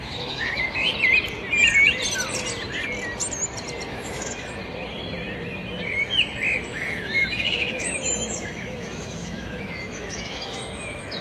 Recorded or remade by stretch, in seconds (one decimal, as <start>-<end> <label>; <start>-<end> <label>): 0.0-0.9 remade; 0.9-3.9 recorded; 3.9-4.6 remade; 4.6-6.7 recorded; 6.7-11.2 remade